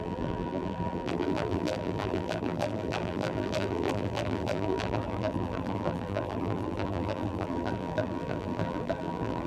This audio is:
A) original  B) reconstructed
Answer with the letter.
B